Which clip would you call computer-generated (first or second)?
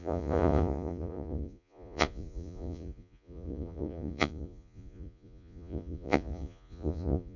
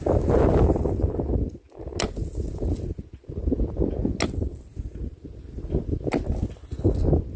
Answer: first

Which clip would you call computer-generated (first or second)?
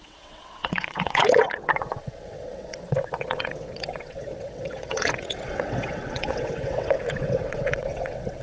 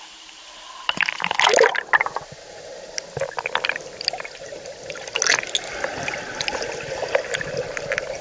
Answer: first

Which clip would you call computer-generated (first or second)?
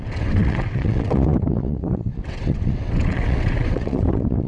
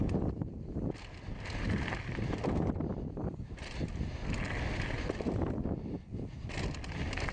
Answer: first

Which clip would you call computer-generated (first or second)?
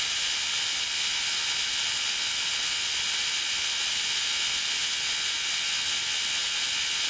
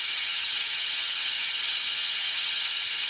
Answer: second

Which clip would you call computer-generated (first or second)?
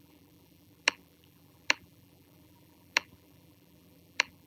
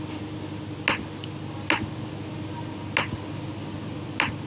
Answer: first